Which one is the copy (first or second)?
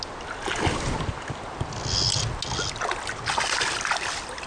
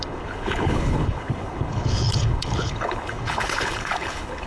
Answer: second